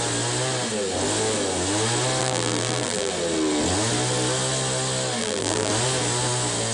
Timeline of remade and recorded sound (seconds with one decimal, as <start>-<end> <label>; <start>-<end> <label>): 0.0-2.2 recorded; 2.2-3.1 remade; 3.1-5.2 recorded; 5.2-5.7 remade; 5.7-6.7 recorded